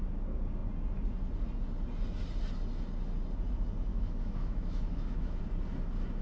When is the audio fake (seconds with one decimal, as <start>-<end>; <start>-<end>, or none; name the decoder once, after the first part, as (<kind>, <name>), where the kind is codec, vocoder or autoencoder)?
3.9-5.4 (autoencoder, DAC-VAE)